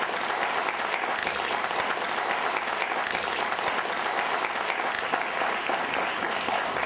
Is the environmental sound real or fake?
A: real